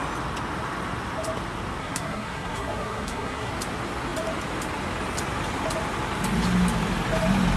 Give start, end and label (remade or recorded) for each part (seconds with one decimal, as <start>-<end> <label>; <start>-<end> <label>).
0.0-1.8 recorded; 1.8-3.5 remade; 3.5-7.6 recorded